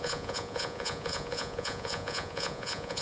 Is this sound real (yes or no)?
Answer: no